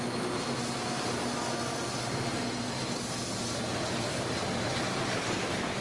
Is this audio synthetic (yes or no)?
no